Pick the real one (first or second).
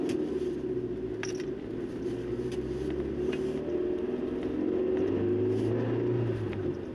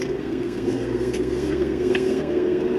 first